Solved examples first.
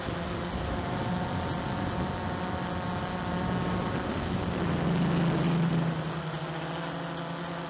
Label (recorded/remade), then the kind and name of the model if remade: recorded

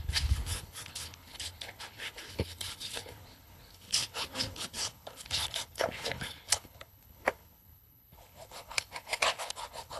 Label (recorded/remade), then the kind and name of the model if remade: remade, codec, HILCodec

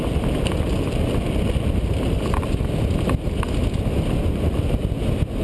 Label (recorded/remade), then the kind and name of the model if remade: recorded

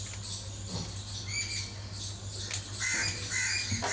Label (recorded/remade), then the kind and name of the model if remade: recorded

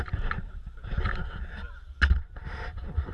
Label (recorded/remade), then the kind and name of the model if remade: recorded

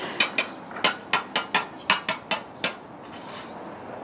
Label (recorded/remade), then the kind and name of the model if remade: recorded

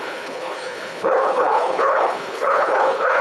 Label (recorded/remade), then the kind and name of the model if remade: remade, codec, HILCodec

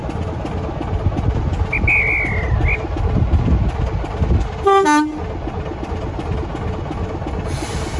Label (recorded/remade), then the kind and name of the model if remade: recorded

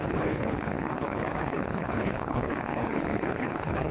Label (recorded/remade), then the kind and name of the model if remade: remade, codec, HILCodec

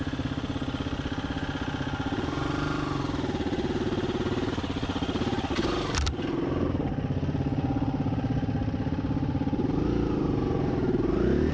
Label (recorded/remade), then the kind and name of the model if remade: recorded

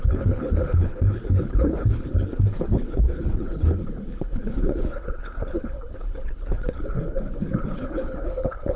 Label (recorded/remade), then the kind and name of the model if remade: remade, codec, HILCodec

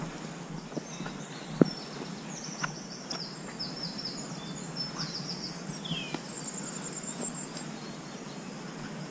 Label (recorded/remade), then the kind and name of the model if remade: recorded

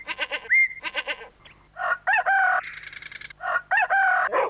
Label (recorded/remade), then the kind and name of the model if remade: recorded